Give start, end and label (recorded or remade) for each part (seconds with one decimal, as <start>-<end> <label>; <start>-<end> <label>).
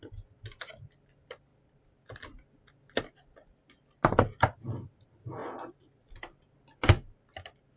0.0-5.4 recorded; 5.4-6.1 remade; 6.1-7.8 recorded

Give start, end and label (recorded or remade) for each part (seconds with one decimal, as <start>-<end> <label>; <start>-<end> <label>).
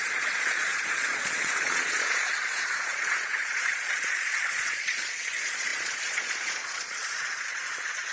0.0-8.1 remade